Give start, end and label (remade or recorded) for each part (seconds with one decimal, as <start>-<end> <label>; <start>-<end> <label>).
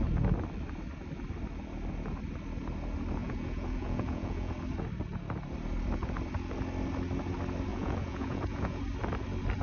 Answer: 0.0-3.2 recorded; 3.2-4.5 remade; 4.5-7.7 recorded; 7.7-8.8 remade; 8.8-9.6 recorded